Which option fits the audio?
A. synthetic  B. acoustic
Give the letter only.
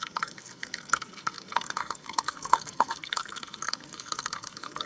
A